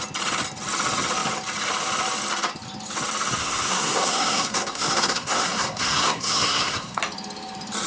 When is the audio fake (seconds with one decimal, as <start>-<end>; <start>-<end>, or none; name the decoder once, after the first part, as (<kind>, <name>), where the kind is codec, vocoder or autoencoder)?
3.4-7.0 (codec, SNAC)